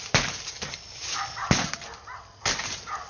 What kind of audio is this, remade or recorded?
recorded